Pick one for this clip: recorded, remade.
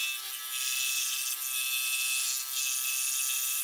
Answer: recorded